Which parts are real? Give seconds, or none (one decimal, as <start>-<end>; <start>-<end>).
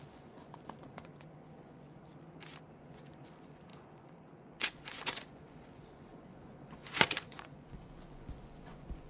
2.1-2.8